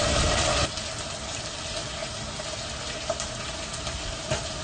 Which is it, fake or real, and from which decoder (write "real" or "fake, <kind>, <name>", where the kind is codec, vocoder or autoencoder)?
real